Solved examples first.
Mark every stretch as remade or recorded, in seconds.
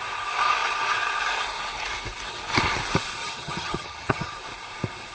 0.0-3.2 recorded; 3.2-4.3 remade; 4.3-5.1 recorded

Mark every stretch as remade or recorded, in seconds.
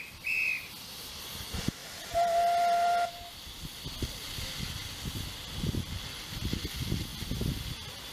0.0-8.1 recorded